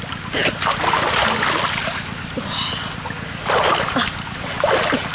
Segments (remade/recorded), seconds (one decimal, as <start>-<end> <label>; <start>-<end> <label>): 0.0-5.1 recorded